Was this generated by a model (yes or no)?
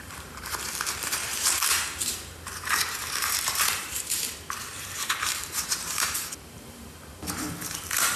yes